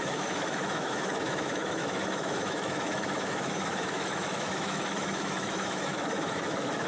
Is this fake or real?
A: fake